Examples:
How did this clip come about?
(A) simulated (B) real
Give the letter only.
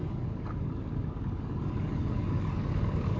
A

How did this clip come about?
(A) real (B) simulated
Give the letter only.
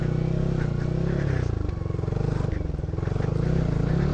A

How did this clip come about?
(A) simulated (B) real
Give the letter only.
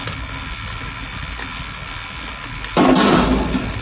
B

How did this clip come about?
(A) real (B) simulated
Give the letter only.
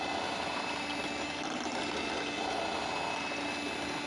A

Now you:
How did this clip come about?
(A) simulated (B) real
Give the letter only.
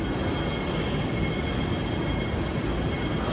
B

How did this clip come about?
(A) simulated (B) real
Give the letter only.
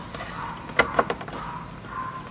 B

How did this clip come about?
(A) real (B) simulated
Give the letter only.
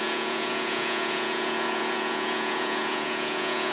B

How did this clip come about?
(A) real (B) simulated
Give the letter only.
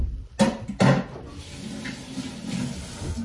A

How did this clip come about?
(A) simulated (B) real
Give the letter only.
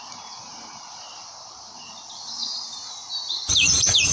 A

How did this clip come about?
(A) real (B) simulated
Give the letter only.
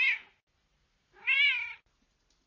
A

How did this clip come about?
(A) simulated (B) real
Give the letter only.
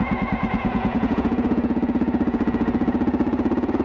A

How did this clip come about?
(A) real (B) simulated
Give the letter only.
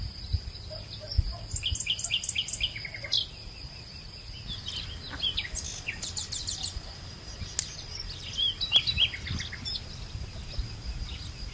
A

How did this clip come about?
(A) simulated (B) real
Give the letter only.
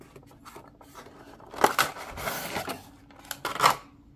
B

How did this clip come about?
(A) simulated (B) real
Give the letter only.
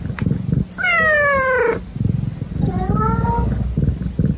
B